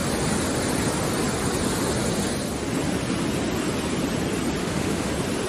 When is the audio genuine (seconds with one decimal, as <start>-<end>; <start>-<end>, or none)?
0.0-4.6; 5.1-5.5